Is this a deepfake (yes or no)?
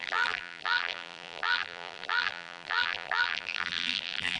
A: yes